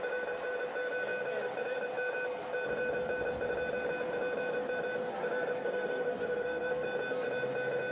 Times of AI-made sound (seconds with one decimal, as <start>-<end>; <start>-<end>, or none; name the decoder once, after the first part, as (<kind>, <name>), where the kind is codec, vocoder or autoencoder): 5.6-6.7 (codec, SNAC)